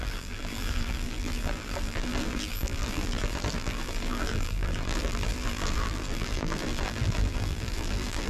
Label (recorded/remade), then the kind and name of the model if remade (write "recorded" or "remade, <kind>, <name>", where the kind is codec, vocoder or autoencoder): remade, vocoder, BigVGAN v2